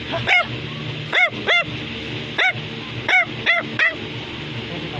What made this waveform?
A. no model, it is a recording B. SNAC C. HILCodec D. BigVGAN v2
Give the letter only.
A